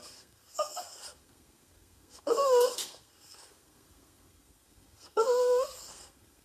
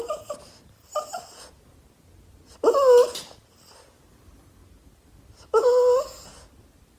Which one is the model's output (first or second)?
first